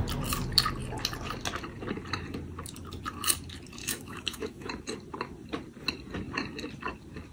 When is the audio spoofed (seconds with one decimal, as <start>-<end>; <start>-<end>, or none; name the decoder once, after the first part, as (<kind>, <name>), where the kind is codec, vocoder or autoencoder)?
3.8-4.7 (autoencoder, DAC-VAE)